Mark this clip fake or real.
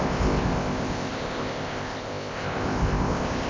fake